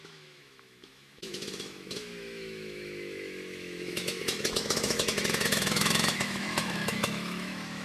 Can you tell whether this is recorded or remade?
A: remade